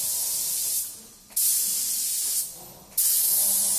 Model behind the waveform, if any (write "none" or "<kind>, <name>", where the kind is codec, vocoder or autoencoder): none